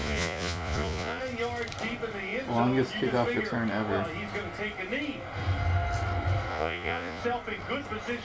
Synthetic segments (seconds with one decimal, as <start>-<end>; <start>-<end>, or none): 0.0-1.2; 6.5-7.2